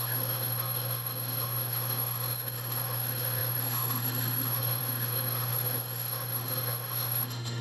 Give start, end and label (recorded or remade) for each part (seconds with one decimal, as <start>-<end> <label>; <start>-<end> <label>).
0.0-7.6 remade